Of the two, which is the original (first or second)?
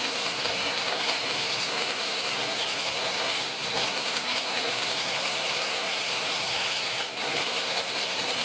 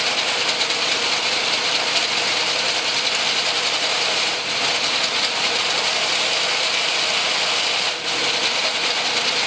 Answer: second